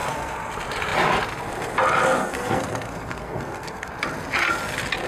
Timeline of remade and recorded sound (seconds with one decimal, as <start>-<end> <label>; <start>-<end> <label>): 0.0-0.5 remade; 0.5-2.2 recorded; 2.2-3.9 remade; 3.9-5.1 recorded